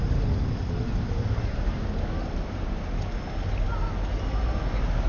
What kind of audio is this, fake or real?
real